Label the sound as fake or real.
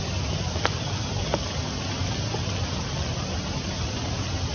real